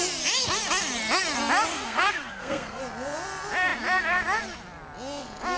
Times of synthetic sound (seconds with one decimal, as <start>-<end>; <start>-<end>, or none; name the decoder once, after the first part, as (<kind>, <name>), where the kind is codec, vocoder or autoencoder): 1.7-2.8 (codec, SNAC)